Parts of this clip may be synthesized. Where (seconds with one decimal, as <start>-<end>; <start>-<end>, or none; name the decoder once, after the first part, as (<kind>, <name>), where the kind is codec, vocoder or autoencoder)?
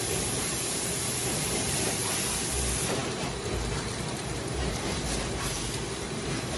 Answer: 0.0-6.6 (vocoder, BigVGAN v2)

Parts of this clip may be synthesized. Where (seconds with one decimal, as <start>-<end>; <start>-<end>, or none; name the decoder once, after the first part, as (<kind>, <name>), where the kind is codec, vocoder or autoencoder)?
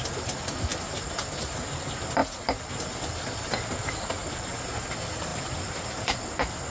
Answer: none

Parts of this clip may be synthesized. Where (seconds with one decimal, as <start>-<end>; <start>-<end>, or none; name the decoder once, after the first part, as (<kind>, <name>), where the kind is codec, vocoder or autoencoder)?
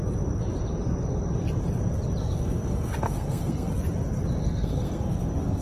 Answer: 2.2-3.7 (codec, SNAC); 4.4-5.6